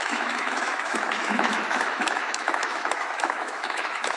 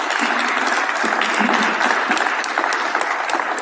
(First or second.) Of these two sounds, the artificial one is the first